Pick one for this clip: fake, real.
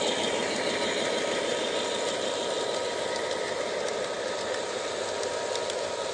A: real